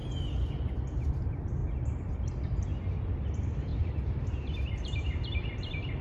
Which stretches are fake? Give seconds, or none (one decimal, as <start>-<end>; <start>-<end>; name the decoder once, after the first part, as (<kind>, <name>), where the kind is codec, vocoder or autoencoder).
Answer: 0.0-1.6 (vocoder, BigVGAN v2); 2.1-2.7; 3.2-6.0